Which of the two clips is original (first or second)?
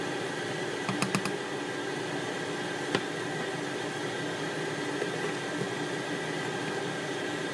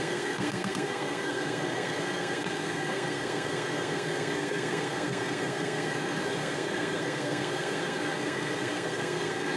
first